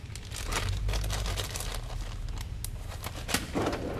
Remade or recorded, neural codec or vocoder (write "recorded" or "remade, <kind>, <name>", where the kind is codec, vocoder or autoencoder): recorded